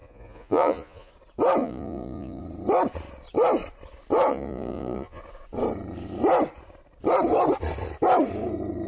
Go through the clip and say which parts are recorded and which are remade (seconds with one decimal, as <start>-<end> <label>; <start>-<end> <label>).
0.0-1.1 remade; 1.1-1.6 recorded; 1.6-2.4 remade; 2.4-4.3 recorded; 4.3-5.2 remade; 5.2-8.9 recorded